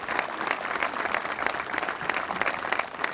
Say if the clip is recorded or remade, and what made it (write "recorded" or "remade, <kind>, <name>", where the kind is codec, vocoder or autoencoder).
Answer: recorded